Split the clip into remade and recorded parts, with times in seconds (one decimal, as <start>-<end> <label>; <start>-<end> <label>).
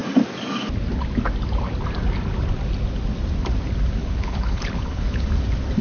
0.0-4.0 recorded; 4.0-5.3 remade; 5.3-5.8 recorded